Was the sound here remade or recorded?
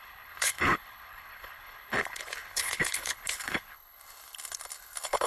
remade